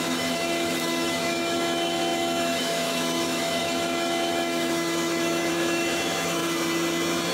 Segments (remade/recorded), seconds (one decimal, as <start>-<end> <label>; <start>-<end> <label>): 0.0-6.4 remade; 6.4-7.3 recorded